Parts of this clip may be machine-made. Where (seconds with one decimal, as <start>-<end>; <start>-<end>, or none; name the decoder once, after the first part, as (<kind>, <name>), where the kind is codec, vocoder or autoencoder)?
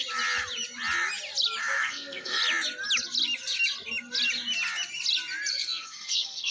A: 1.6-2.4 (codec, SNAC); 5.5-6.5